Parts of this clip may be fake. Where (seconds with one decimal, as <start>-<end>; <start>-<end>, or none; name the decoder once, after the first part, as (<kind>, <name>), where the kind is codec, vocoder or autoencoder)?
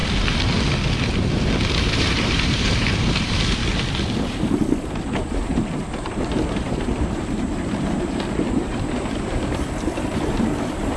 1.8-3.6 (vocoder, BigVGAN v2); 4.8-11.0